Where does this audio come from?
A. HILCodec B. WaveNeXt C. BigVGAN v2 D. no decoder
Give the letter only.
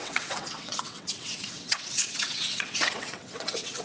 B